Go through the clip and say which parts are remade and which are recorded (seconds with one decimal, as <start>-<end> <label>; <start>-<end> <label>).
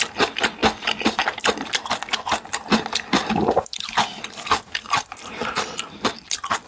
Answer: 0.0-6.7 recorded